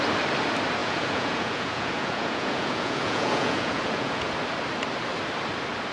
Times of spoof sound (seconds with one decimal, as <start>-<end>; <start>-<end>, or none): 0.8-4.3